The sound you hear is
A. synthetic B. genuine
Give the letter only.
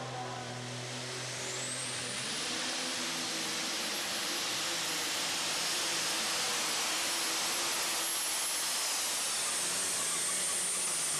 B